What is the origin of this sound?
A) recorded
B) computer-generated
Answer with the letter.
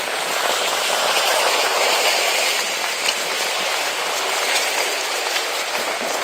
B